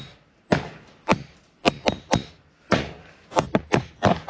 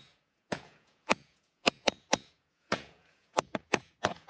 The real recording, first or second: first